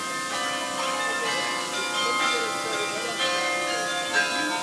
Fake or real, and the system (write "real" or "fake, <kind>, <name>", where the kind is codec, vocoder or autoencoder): real